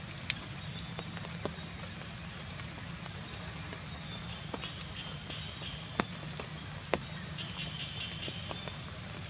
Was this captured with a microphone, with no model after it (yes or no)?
yes